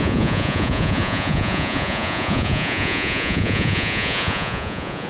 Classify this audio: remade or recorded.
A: remade